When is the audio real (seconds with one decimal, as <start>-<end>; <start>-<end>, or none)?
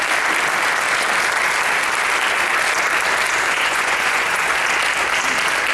0.0-3.5; 4.5-5.7